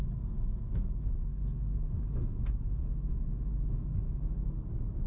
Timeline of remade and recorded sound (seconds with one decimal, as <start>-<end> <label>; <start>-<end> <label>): 0.0-1.3 recorded; 1.3-4.4 remade; 4.4-5.1 recorded